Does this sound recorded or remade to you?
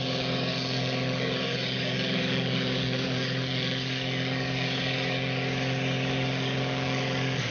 remade